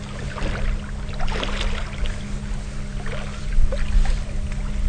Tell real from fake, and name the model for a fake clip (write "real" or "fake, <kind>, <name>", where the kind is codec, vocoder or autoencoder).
real